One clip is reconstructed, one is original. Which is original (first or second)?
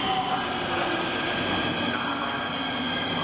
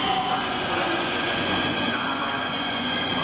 first